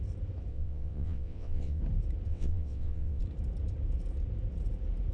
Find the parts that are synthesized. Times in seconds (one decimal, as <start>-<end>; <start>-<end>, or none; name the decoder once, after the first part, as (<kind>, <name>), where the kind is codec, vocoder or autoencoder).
0.5-1.8 (vocoder, WaveNeXt); 2.3-3.2